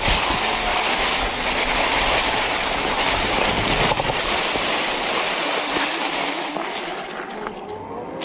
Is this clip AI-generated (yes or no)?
no